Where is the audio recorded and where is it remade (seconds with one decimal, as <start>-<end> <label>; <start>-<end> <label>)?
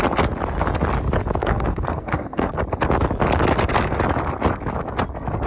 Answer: 0.0-1.4 recorded; 1.4-2.5 remade; 2.5-5.5 recorded